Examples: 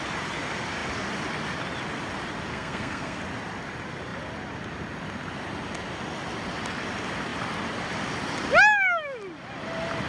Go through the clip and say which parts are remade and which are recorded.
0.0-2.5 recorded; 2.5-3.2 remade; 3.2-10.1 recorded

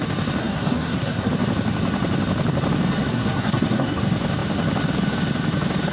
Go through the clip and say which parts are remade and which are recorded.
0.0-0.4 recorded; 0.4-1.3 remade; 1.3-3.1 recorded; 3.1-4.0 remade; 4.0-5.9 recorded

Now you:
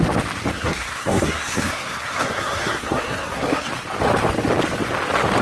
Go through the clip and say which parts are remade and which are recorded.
0.0-0.5 recorded; 0.5-3.7 remade; 3.7-5.4 recorded